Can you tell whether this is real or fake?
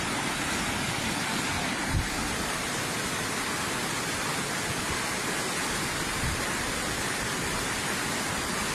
real